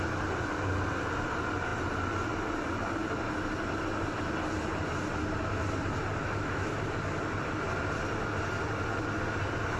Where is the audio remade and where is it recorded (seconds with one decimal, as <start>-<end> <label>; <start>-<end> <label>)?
0.0-6.2 recorded; 6.2-6.7 remade; 6.7-9.8 recorded